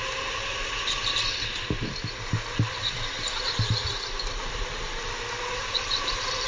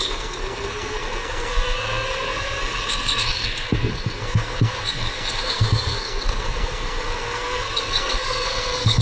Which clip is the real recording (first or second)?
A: first